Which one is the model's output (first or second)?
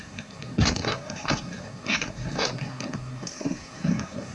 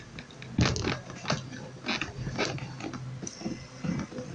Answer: first